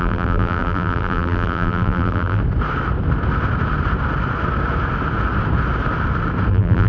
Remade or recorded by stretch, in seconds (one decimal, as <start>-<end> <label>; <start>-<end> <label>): 0.0-2.4 remade; 2.4-6.5 recorded; 6.5-6.9 remade

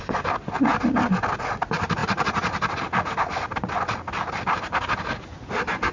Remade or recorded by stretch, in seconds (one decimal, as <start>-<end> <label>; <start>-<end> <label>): 0.0-5.9 recorded

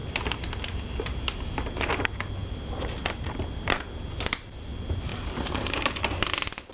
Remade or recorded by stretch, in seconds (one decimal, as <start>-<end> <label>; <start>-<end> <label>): 0.0-2.4 recorded; 2.4-3.8 remade; 3.8-5.1 recorded; 5.1-6.3 remade; 6.3-6.7 recorded

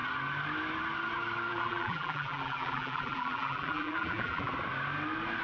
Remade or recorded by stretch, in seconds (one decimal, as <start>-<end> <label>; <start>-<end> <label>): 0.0-1.5 recorded; 1.5-4.5 remade; 4.5-5.4 recorded